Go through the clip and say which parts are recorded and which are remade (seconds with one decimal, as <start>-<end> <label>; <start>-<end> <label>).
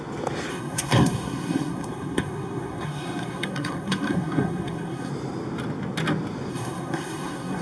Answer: 0.0-0.5 recorded; 0.5-5.1 remade; 5.1-6.5 recorded; 6.5-7.6 remade